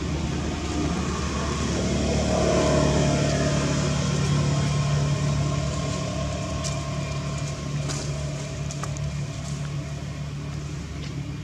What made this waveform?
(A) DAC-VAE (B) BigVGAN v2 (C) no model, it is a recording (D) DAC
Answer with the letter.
C